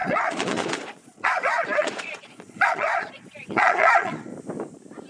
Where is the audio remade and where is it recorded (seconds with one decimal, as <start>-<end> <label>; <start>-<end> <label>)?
0.0-4.3 remade; 4.3-5.1 recorded